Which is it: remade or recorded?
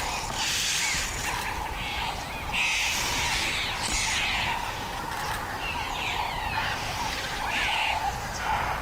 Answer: recorded